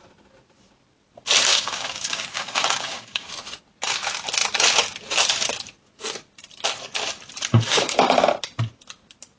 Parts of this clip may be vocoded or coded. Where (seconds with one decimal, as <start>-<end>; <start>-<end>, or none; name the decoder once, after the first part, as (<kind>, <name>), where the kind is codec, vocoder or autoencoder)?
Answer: 1.5-3.3 (codec, DAC); 7.5-8.3